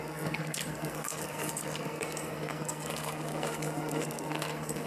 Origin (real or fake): fake